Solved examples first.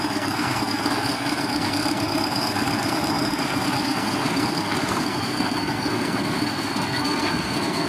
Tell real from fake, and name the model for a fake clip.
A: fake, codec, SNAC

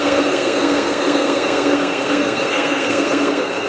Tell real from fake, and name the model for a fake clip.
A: fake, codec, SNAC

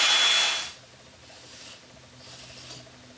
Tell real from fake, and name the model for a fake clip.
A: real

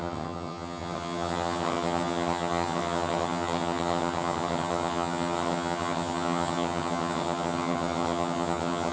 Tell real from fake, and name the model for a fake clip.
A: fake, vocoder, HiFi-GAN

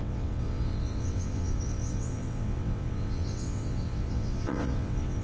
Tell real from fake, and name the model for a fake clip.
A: fake, vocoder, WaveNeXt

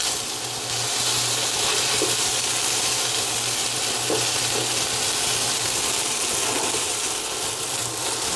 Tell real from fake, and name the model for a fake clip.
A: real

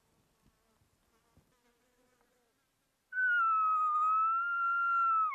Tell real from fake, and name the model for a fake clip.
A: real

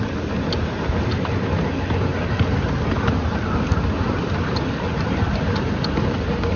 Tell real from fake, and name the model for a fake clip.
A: real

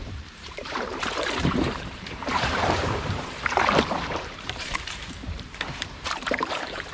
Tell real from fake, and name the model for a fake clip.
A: fake, vocoder, BigVGAN v2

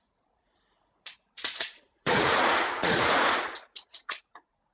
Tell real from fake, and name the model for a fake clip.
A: fake, vocoder, Vocos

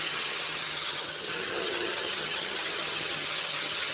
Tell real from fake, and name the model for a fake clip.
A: fake, vocoder, HiFi-GAN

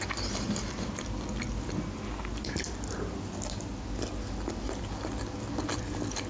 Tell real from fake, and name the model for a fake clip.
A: real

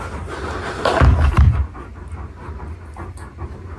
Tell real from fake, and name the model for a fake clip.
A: real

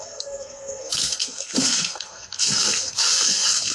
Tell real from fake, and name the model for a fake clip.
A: fake, codec, SNAC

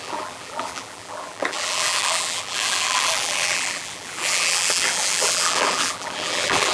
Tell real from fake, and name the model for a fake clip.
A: fake, vocoder, BigVGAN v2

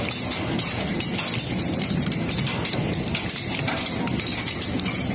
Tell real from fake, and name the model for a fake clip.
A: real